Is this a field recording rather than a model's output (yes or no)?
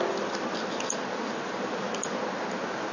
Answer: yes